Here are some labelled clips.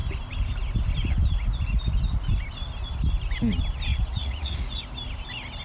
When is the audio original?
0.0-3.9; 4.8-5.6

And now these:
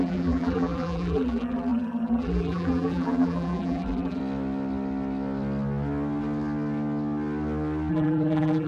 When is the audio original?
4.2-7.9

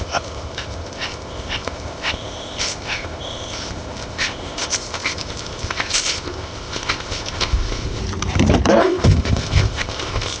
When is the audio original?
8.0-8.8

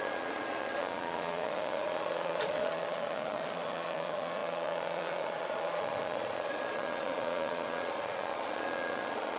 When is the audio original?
none